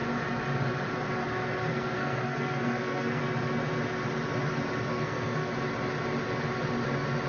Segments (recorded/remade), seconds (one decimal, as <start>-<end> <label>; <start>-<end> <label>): 0.0-1.7 recorded; 1.7-3.2 remade; 3.2-4.9 recorded; 4.9-5.5 remade; 5.5-7.3 recorded